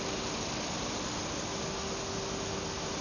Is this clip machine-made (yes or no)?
no